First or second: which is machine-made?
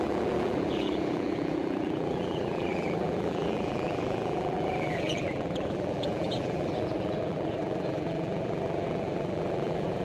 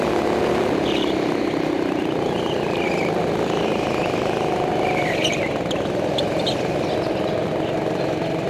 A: first